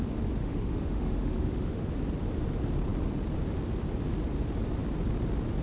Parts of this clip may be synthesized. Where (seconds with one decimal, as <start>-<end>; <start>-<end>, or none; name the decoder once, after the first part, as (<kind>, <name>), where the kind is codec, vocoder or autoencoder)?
0.4-1.9 (autoencoder, DAC-VAE)